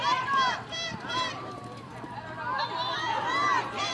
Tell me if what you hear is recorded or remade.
remade